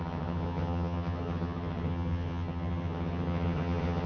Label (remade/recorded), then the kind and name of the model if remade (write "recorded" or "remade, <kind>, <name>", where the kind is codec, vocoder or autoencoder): remade, vocoder, HiFi-GAN